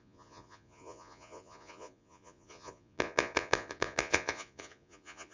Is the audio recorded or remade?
remade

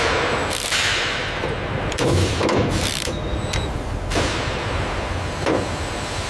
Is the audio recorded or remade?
remade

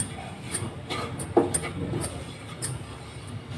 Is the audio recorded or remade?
recorded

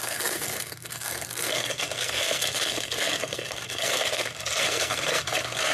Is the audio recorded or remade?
remade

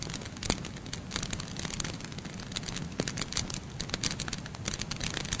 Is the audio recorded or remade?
recorded